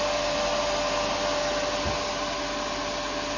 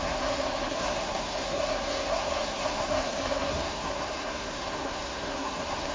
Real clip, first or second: first